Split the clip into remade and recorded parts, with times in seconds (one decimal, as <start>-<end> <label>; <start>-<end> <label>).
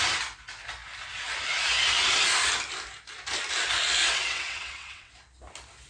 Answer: 0.0-4.0 recorded; 4.0-5.1 remade; 5.1-5.9 recorded